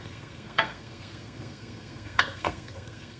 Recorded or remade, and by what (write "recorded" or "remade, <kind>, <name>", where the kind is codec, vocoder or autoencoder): remade, codec, SNAC